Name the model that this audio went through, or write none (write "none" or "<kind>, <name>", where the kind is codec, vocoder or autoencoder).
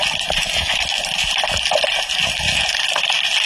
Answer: none